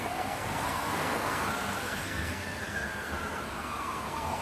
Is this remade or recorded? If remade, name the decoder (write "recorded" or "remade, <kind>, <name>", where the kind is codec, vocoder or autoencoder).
remade, codec, SNAC